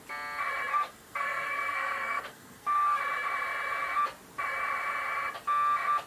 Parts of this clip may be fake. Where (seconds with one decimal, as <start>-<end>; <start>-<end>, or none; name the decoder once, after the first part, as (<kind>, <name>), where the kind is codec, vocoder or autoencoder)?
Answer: 0.7-3.0 (codec, SNAC)

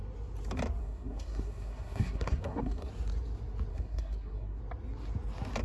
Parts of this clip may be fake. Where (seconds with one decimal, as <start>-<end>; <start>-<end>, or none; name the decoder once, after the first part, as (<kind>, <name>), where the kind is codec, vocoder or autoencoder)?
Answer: 0.8-2.9 (codec, SNAC); 3.7-4.6